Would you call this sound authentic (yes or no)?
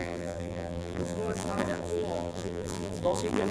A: no